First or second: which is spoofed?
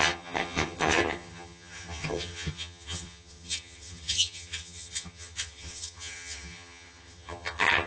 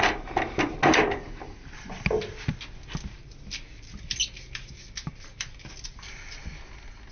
first